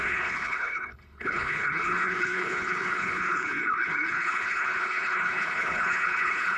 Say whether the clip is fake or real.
fake